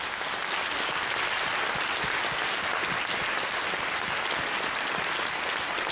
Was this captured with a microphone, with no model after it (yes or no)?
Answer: yes